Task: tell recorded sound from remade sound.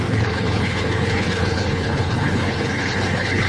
remade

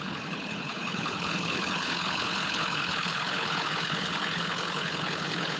remade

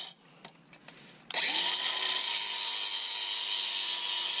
recorded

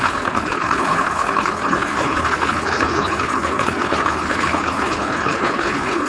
remade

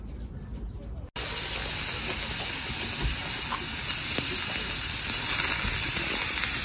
recorded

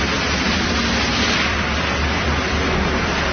recorded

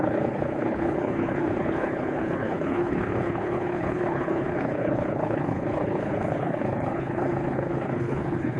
remade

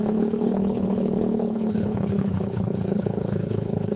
remade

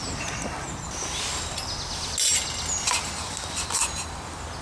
recorded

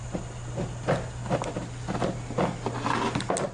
recorded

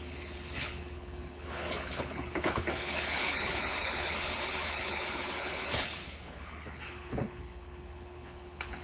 remade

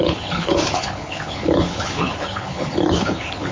remade